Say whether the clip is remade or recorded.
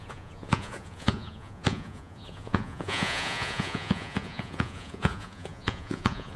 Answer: remade